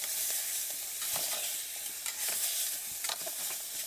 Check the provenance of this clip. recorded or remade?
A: remade